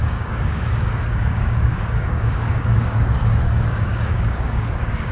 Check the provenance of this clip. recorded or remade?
remade